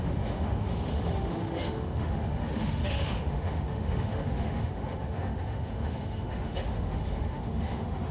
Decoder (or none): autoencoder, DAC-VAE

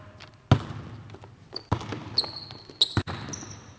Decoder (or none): none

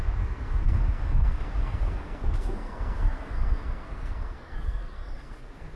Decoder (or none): codec, SNAC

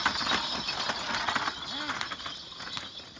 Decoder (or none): none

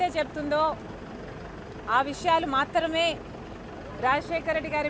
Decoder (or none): none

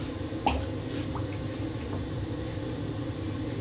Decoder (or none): none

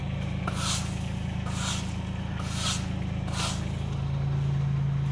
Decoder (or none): none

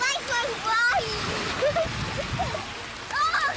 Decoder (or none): none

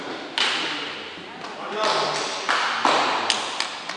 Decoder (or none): none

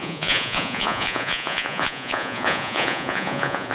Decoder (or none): vocoder, Vocos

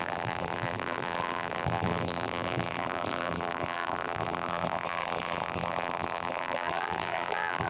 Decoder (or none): vocoder, BigVGAN v2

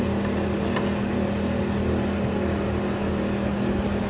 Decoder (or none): none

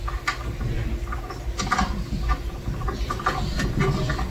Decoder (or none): none